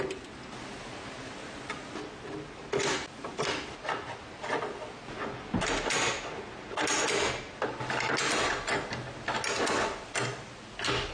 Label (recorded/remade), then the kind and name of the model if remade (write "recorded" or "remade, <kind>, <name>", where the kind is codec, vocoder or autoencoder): recorded